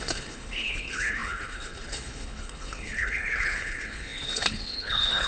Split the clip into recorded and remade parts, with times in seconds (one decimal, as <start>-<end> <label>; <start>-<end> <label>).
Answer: 0.0-5.3 remade